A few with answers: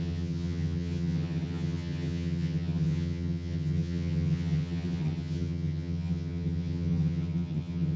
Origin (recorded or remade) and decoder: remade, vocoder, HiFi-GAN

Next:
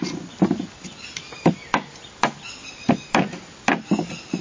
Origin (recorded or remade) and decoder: recorded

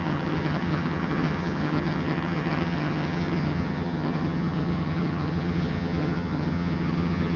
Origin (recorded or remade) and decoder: remade, vocoder, HiFi-GAN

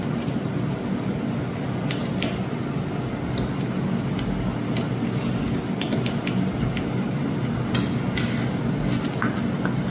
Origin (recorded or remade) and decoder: recorded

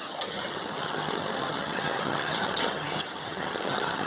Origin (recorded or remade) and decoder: remade, vocoder, HiFi-GAN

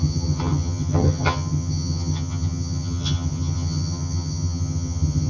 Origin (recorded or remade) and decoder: remade, vocoder, HiFi-GAN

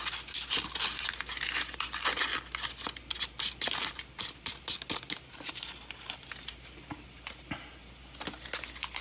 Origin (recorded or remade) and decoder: recorded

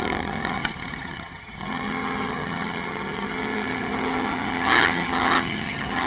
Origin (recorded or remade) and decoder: remade, vocoder, HiFi-GAN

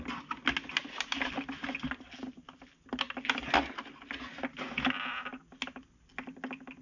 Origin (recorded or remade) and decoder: recorded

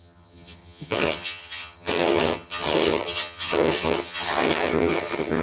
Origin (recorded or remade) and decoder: remade, vocoder, HiFi-GAN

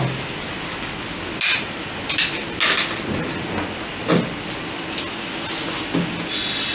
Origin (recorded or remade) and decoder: recorded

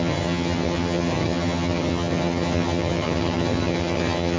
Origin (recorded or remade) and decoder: remade, vocoder, HiFi-GAN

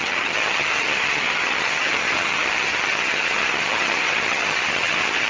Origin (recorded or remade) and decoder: remade, vocoder, HiFi-GAN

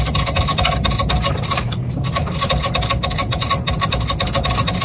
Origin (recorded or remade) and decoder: recorded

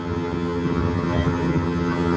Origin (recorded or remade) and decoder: remade, vocoder, HiFi-GAN